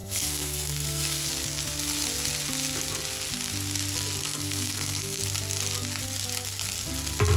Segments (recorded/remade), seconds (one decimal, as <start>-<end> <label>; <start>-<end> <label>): 0.0-1.3 remade; 1.3-4.2 recorded; 4.2-5.2 remade; 5.2-7.4 recorded

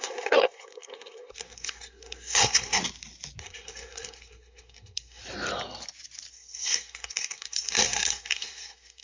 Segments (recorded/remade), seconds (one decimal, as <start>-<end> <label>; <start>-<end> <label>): 0.0-2.8 remade; 2.8-3.4 recorded; 3.4-5.2 remade; 5.2-6.3 recorded; 6.3-9.0 remade

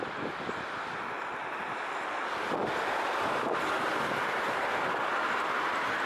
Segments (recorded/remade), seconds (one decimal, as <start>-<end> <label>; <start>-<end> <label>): 0.0-6.1 recorded

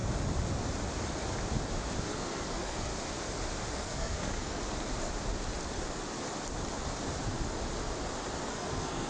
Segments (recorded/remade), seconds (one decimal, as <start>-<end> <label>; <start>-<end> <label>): 0.0-2.1 recorded; 2.1-2.9 remade; 2.9-3.7 recorded; 3.7-4.6 remade; 4.6-8.5 recorded; 8.5-9.1 remade

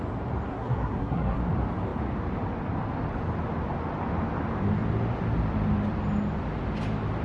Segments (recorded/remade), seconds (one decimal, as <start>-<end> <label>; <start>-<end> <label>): 0.0-0.5 recorded; 0.5-1.4 remade; 1.4-7.2 recorded

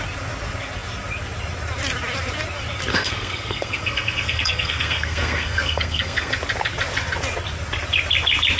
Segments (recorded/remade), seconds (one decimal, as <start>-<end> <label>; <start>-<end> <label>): 0.0-2.9 recorded; 2.9-6.3 remade; 6.3-8.6 recorded